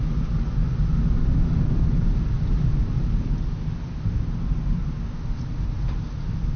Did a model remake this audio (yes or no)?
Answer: no